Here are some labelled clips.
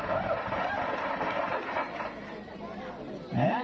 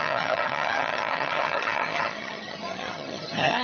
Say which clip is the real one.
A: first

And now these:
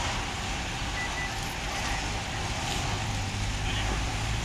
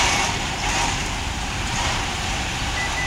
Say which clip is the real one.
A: first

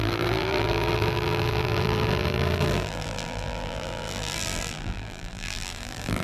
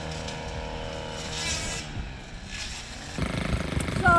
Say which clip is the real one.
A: second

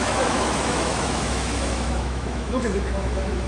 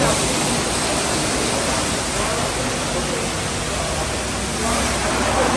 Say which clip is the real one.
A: second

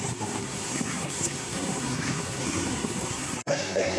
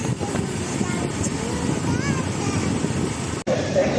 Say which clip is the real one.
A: second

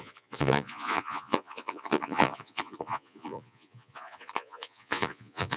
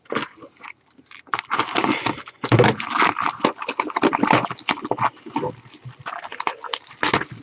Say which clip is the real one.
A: second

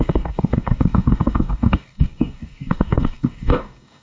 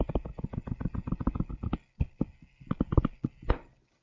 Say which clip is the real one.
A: second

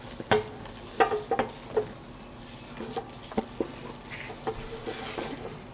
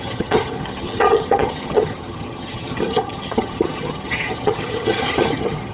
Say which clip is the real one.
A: first